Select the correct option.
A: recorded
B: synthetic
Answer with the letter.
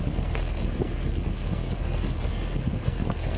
B